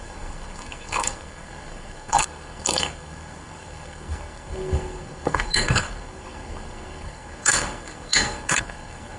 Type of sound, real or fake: fake